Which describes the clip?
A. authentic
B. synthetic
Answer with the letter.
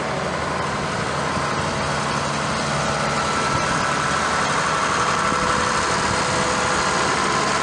A